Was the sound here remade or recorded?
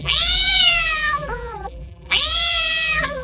remade